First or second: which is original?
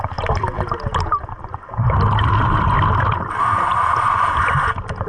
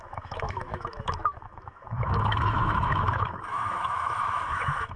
first